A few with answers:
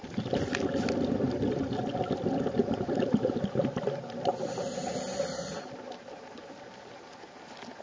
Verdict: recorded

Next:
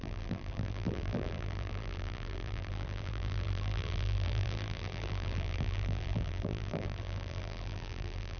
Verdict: remade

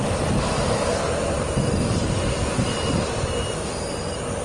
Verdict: recorded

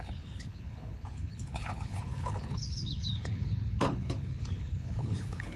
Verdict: remade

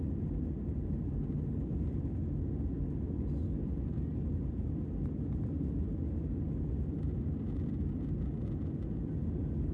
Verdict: recorded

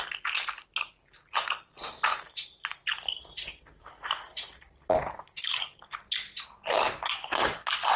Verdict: recorded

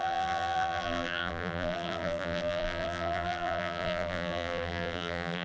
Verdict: remade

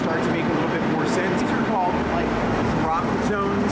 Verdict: recorded